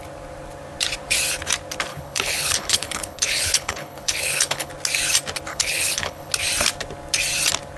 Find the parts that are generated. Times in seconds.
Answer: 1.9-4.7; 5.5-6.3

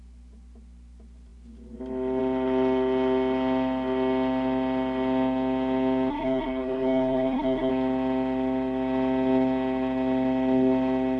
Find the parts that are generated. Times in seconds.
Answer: 6.1-7.7

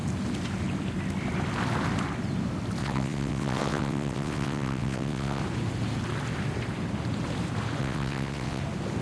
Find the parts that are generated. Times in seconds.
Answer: 2.8-5.4; 7.8-8.6

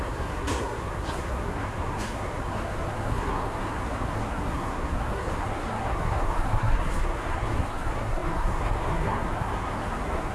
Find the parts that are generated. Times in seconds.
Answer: 0.0-10.3

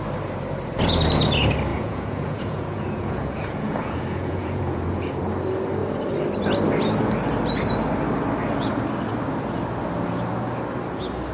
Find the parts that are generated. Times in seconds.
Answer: 1.7-5.2

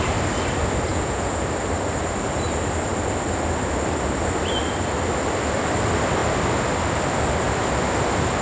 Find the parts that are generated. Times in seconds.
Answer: 0.9-1.4